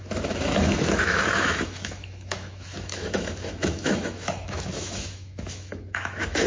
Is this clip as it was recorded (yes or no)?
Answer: no